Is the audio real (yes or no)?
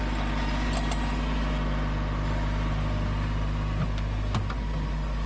yes